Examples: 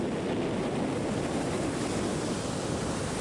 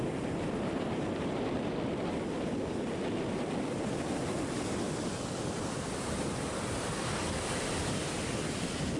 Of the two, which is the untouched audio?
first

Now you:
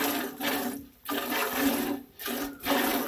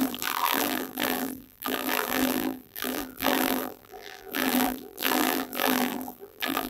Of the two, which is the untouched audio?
first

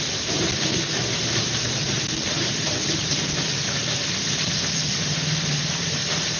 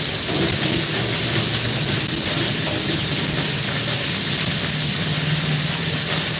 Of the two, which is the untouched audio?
second